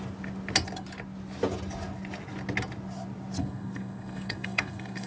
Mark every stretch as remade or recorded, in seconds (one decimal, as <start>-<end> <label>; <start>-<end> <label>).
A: 0.0-3.4 recorded; 3.4-5.1 remade